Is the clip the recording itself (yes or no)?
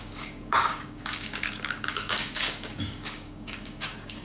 no